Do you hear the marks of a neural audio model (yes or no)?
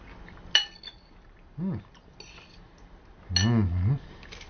no